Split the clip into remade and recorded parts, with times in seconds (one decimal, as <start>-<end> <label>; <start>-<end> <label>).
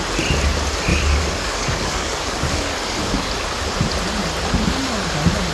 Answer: 0.0-0.9 recorded; 0.9-3.3 remade; 3.3-5.5 recorded